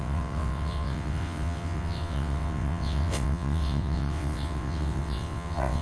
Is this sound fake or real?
fake